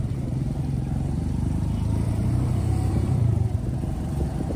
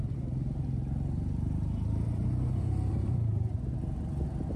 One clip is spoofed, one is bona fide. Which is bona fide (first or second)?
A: second